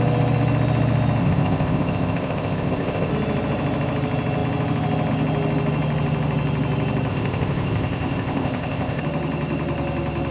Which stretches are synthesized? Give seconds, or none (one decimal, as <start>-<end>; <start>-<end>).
1.2-3.1; 7.1-9.0